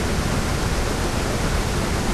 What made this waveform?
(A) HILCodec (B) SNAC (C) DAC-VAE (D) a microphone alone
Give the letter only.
D